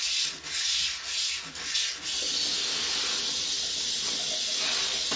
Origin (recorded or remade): recorded